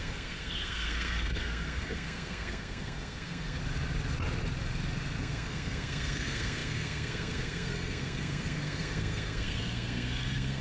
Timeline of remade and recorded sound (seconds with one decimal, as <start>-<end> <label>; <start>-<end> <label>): 0.0-3.6 remade; 3.6-5.2 recorded; 5.2-10.6 remade